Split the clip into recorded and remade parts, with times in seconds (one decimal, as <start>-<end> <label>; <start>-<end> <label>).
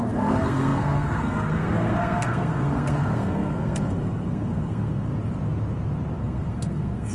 0.0-5.1 remade; 5.1-6.2 recorded; 6.2-7.1 remade